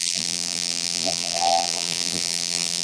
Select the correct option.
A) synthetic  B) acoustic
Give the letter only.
A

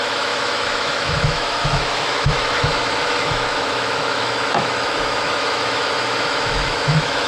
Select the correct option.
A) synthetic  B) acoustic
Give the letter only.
A